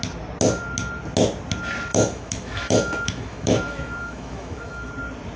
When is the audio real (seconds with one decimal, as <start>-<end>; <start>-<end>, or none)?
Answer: 0.0-1.9; 4.9-5.4